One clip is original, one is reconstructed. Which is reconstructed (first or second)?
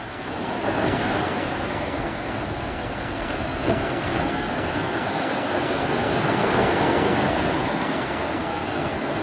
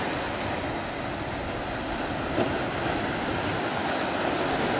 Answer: first